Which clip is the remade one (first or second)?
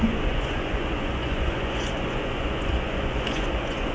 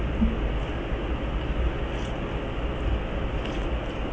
first